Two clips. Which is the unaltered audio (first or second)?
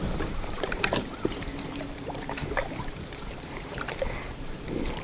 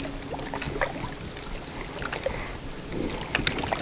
second